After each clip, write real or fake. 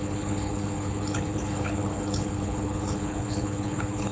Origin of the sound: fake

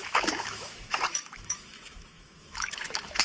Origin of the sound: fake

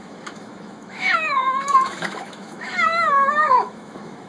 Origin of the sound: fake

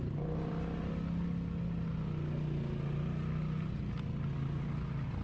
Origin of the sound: real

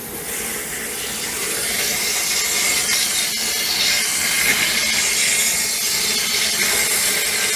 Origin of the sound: real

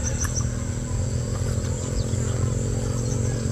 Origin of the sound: real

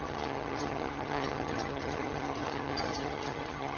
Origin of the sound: fake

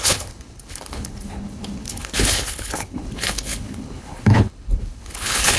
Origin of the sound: fake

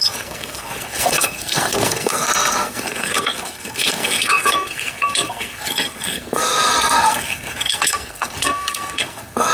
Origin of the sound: fake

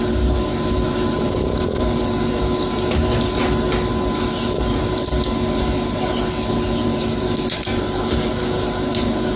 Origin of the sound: real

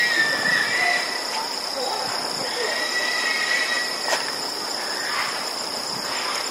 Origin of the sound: real